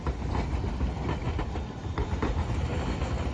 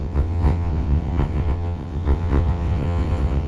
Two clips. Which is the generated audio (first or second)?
second